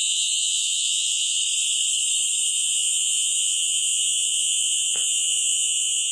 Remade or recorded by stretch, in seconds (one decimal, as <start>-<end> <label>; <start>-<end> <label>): 0.0-1.4 remade; 1.4-2.5 recorded; 2.5-6.1 remade